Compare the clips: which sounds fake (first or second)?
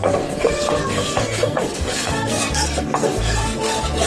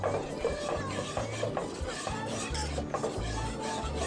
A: first